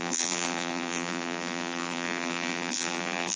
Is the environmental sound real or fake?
fake